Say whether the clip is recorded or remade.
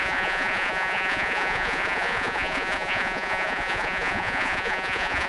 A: remade